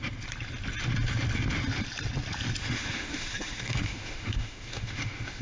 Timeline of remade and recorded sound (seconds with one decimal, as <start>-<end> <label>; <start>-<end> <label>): 0.0-2.6 recorded; 2.6-5.4 remade